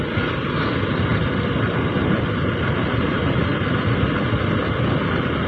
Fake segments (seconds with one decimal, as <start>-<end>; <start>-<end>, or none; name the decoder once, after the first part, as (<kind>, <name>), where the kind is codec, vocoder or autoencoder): none

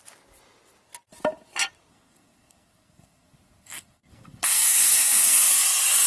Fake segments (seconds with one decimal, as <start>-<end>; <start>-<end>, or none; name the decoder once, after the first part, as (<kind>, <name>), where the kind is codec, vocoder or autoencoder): 1.9-5.6 (codec, SNAC)

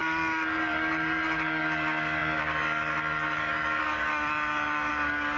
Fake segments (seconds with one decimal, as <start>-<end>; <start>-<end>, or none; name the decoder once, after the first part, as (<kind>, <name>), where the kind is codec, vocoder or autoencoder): 0.0-5.4 (codec, DAC)